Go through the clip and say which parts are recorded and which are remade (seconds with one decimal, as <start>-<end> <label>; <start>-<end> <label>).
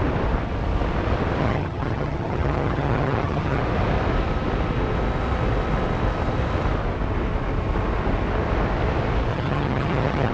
0.0-1.4 recorded; 1.4-3.6 remade; 3.6-9.3 recorded; 9.3-10.3 remade